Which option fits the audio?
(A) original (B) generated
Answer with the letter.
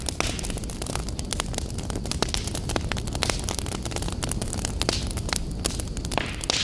A